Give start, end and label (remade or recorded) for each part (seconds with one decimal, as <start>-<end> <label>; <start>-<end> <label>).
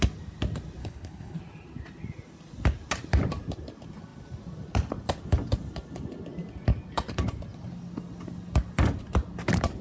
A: 0.0-0.8 recorded; 0.8-1.4 remade; 1.4-9.8 recorded